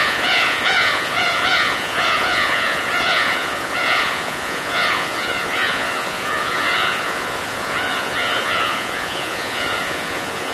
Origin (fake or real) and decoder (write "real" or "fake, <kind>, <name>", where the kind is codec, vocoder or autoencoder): fake, vocoder, Vocos